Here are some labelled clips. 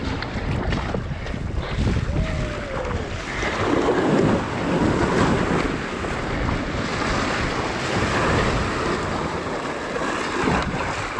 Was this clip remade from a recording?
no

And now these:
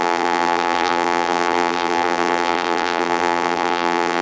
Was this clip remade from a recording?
yes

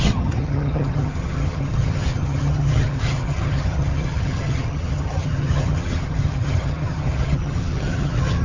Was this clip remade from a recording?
yes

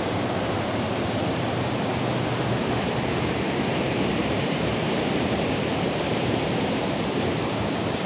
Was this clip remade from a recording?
yes